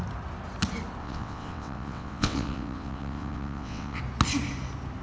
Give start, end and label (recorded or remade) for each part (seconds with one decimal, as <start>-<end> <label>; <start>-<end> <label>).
0.0-1.0 recorded; 1.0-4.0 remade; 4.0-5.0 recorded

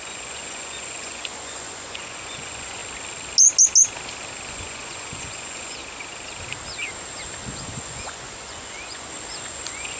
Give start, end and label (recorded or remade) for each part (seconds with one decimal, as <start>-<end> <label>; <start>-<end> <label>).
0.0-2.8 remade; 2.8-4.5 recorded; 4.5-5.8 remade; 5.8-7.5 recorded; 7.5-10.0 remade